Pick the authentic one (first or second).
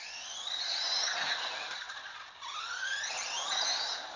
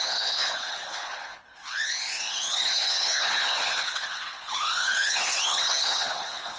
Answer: first